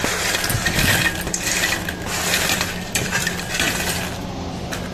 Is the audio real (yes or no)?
yes